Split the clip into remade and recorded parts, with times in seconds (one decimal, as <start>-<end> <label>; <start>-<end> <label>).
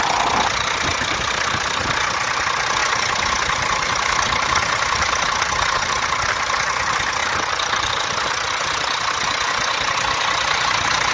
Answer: 0.0-0.9 recorded; 0.9-2.4 remade; 2.4-2.8 recorded; 2.8-6.3 remade; 6.3-11.1 recorded